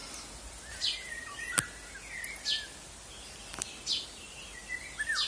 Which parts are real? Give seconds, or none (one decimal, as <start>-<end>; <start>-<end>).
0.0-5.3

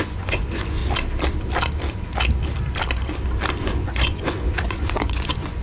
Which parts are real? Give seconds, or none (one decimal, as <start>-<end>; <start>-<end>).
0.8-3.6

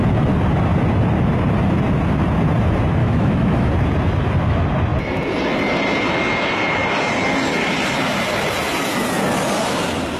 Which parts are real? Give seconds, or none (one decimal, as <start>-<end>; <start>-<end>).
0.0-3.0; 3.7-10.2

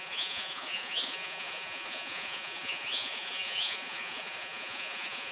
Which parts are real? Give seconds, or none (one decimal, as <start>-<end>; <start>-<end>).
none

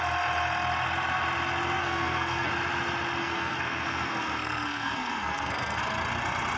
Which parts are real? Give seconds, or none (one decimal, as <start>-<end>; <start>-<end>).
0.0-1.8; 2.5-3.2; 5.8-6.6